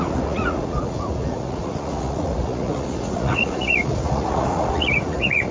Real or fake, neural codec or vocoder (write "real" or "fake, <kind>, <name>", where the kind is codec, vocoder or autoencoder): fake, vocoder, Vocos